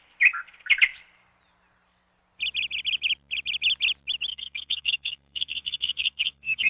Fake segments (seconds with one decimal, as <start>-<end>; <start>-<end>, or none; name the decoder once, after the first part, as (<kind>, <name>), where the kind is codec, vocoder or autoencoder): 4.3-6.7 (codec, SNAC)